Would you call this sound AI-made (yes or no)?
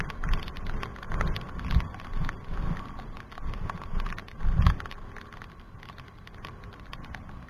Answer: no